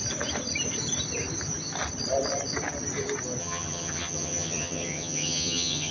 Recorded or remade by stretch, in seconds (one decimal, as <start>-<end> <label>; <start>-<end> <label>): 0.0-3.4 recorded; 3.4-5.9 remade